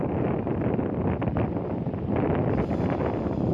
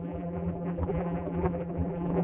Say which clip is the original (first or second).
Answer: first